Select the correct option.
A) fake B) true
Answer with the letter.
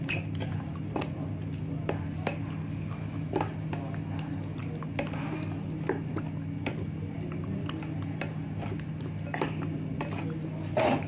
B